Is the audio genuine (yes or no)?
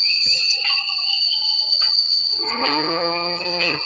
no